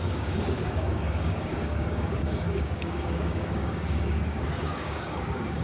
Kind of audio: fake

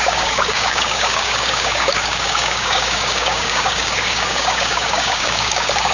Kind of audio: fake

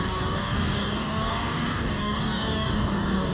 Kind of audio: fake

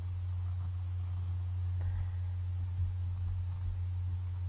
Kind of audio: real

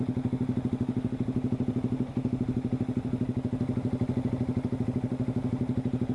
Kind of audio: real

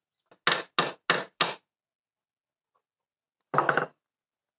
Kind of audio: real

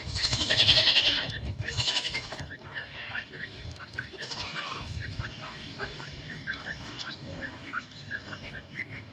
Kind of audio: fake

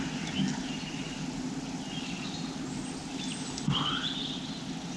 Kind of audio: real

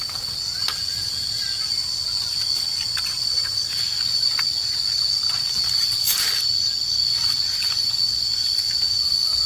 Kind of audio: real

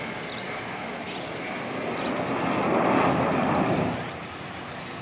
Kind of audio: real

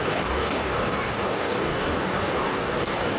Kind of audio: fake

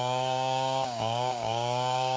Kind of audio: fake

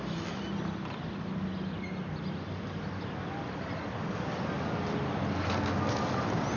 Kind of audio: real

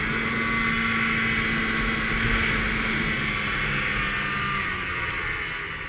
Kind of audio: real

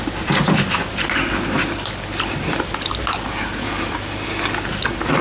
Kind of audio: real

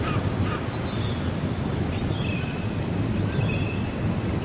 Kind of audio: real